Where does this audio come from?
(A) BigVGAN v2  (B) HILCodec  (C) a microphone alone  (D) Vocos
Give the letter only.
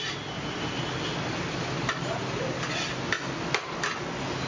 C